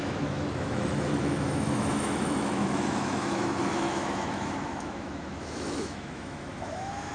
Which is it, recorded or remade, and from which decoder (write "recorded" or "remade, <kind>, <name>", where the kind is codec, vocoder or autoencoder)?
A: remade, autoencoder, DAC-VAE